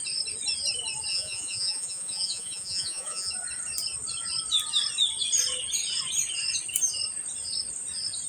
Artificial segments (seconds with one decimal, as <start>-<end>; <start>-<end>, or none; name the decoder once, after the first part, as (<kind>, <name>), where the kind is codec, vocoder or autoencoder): 1.1-3.3 (vocoder, Vocos)